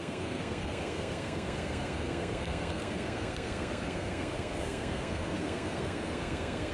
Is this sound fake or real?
fake